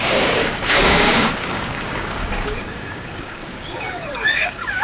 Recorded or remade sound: remade